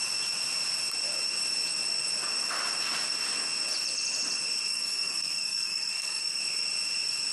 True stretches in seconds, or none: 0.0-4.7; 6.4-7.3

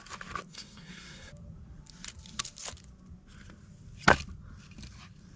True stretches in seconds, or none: 0.0-0.5; 1.3-5.4

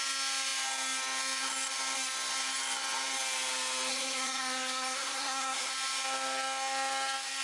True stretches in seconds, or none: 0.0-3.9; 5.7-7.4

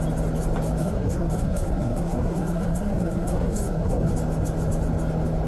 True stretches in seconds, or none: 0.0-0.8; 4.1-5.5

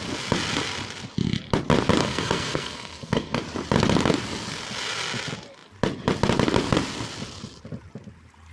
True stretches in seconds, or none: 0.0-2.0; 3.4-8.5

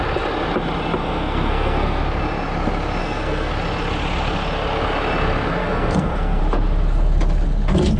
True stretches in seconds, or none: 0.0-1.0; 2.0-3.0; 3.5-5.6; 6.4-8.0